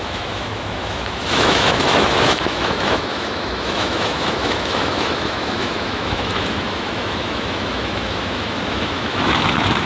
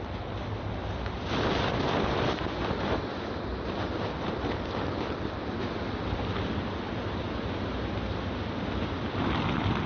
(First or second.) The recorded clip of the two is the second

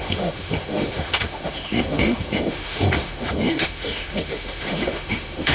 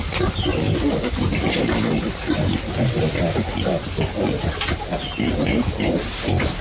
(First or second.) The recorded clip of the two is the second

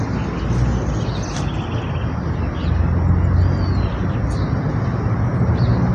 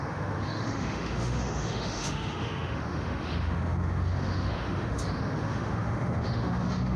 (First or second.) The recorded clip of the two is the first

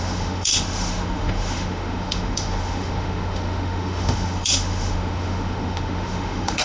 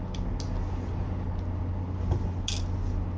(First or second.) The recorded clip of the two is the second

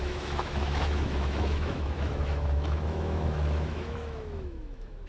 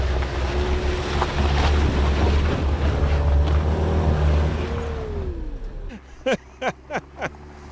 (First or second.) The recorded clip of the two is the second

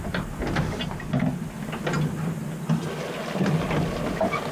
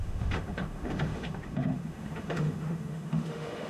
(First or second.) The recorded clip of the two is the first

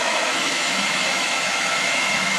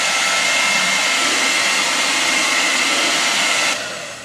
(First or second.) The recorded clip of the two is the second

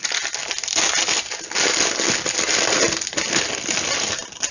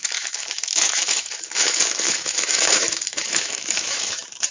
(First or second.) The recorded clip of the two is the first